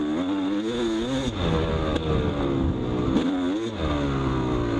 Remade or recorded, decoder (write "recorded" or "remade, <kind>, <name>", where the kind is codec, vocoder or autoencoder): recorded